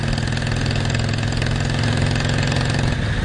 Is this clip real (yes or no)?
yes